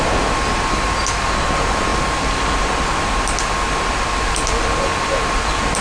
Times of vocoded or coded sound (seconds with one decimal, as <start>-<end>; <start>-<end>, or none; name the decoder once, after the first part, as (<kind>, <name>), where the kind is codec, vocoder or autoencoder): none

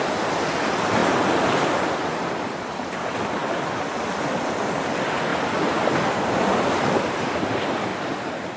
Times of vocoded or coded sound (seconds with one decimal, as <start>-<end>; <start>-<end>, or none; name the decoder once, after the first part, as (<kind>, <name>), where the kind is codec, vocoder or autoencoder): 1.0-2.6 (vocoder, BigVGAN v2); 3.4-4.4; 5.3-5.9; 7.9-8.6

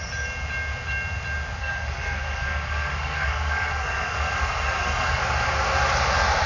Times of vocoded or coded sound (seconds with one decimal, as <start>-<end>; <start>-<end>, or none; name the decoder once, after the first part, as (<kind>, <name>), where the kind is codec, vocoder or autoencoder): 1.6-5.2 (codec, SNAC)

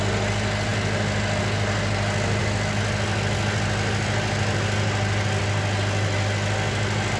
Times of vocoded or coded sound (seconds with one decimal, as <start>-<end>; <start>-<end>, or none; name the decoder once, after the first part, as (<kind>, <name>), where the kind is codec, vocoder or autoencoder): none

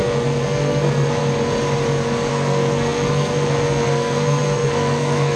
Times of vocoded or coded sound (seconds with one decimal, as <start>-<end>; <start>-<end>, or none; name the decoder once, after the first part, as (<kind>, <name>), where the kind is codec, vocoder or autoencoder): 0.0-1.2 (codec, SNAC); 2.3-5.4

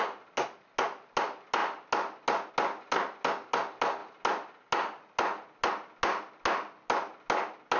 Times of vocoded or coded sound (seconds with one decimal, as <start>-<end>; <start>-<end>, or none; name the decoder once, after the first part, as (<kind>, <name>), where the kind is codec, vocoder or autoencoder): none